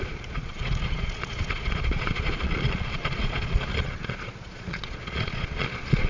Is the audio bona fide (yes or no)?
no